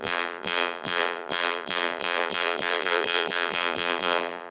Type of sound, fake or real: fake